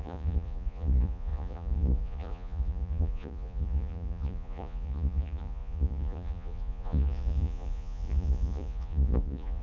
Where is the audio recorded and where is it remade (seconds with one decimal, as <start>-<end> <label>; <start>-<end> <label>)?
0.0-9.6 remade